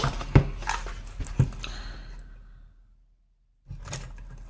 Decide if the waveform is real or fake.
real